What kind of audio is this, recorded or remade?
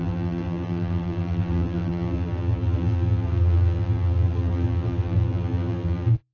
remade